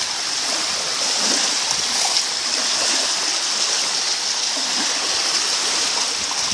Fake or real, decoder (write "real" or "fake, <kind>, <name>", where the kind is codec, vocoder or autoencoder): real